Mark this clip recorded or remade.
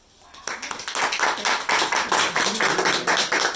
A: recorded